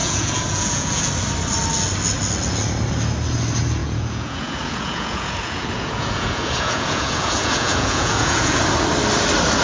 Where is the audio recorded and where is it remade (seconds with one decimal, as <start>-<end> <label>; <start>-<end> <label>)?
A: 0.0-1.1 remade; 1.1-3.8 recorded; 3.8-8.6 remade; 8.6-9.6 recorded